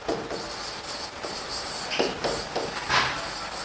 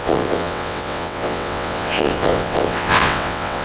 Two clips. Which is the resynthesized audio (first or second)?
second